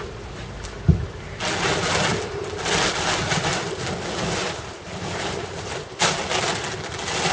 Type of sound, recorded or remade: recorded